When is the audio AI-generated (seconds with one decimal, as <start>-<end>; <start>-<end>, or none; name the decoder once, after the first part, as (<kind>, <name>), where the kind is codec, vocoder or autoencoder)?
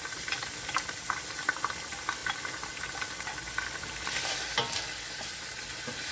0.0-4.3 (vocoder, BigVGAN v2); 5.2-6.1